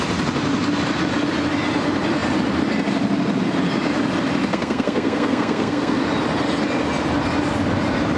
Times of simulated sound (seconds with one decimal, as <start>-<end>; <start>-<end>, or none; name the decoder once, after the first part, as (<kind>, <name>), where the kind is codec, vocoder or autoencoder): 4.5-6.0 (codec, SNAC)